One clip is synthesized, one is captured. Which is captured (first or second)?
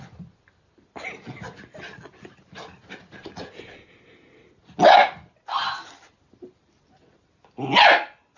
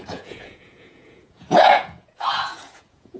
first